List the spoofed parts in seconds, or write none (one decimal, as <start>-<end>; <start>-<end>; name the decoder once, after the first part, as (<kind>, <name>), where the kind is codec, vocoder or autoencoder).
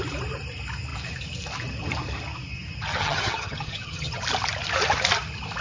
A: 2.9-4.2 (vocoder, HiFi-GAN)